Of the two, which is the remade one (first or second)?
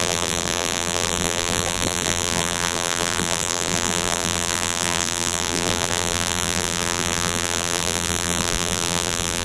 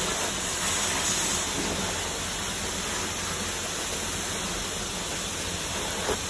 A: first